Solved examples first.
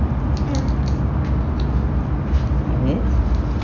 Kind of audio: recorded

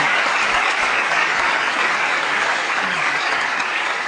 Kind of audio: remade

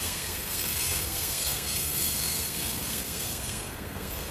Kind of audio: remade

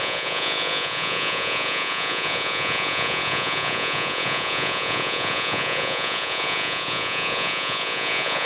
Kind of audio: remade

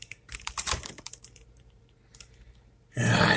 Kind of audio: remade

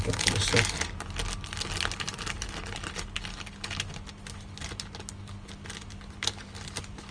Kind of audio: recorded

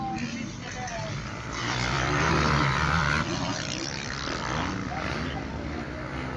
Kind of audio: recorded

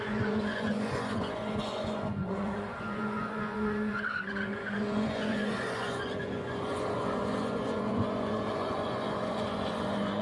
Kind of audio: remade